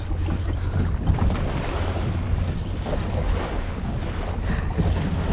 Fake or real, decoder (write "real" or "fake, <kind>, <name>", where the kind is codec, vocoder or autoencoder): fake, vocoder, BigVGAN v2